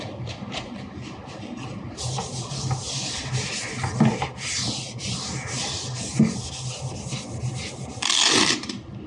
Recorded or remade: recorded